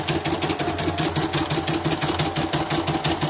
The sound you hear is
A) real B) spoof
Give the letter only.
A